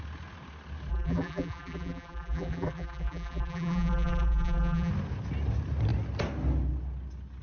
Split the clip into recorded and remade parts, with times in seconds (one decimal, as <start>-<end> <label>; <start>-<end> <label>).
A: 0.0-0.9 recorded; 0.9-4.9 remade; 4.9-7.4 recorded